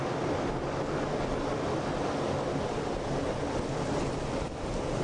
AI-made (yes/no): no